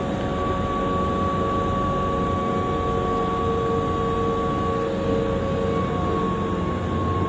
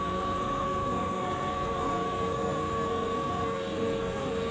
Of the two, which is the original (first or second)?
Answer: first